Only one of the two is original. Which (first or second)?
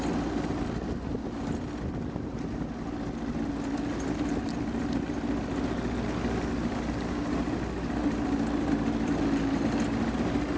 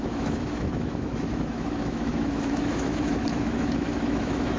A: first